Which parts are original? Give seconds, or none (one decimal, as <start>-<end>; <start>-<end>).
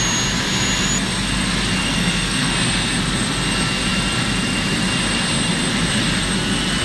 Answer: 0.0-1.8; 2.5-6.8